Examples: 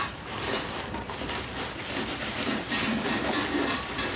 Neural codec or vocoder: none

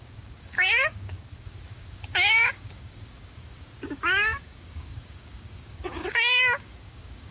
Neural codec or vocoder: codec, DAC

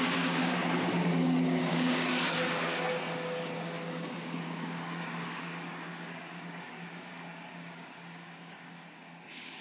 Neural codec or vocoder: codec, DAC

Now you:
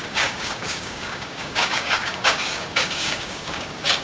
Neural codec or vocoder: codec, DAC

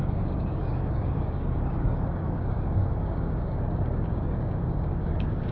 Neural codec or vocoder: codec, DAC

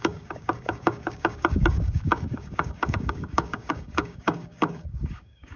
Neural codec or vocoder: codec, DAC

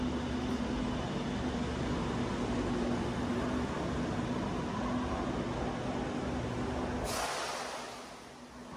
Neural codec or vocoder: none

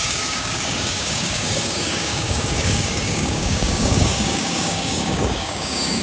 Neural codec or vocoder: codec, DAC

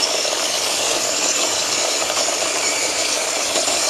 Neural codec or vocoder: codec, DAC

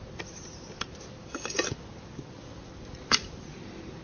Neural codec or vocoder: none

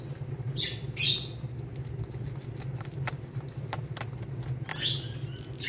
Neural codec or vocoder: none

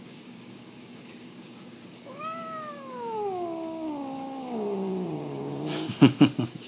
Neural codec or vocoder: codec, DAC